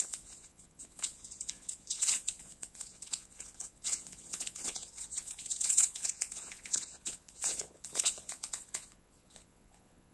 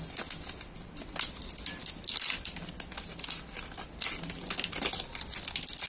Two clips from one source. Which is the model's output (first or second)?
first